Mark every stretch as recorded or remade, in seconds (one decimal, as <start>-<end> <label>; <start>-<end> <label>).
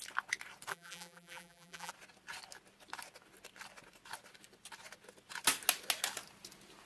0.0-0.7 recorded; 0.7-1.9 remade; 1.9-6.9 recorded